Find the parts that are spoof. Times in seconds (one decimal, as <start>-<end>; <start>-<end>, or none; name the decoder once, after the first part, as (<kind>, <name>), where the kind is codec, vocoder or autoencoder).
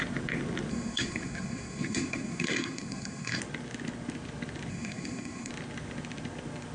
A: 0.7-3.4 (codec, SNAC); 4.7-5.5